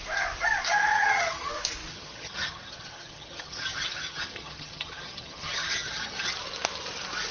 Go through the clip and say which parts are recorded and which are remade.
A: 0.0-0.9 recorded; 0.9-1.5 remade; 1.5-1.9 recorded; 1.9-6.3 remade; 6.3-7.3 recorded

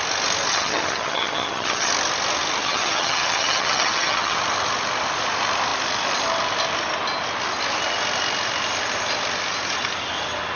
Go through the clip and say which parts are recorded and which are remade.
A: 0.0-0.5 recorded; 0.5-1.9 remade; 1.9-2.6 recorded; 2.6-4.4 remade; 4.4-10.6 recorded

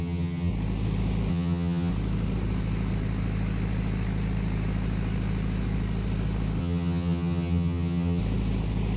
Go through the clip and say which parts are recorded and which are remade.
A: 0.0-0.5 remade; 0.5-1.3 recorded; 1.3-1.9 remade; 1.9-6.6 recorded; 6.6-8.2 remade; 8.2-9.0 recorded

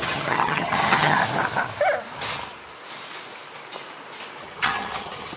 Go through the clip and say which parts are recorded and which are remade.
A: 0.0-1.2 remade; 1.2-4.4 recorded; 4.4-5.4 remade

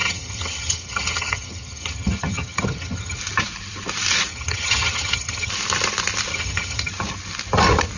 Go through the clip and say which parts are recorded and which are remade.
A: 0.0-3.2 remade; 3.2-4.3 recorded; 4.3-5.5 remade; 5.5-6.3 recorded; 6.3-6.9 remade; 6.9-8.0 recorded

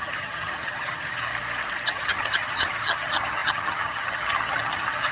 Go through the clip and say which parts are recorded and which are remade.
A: 0.0-1.3 remade; 1.3-1.9 recorded; 1.9-5.1 remade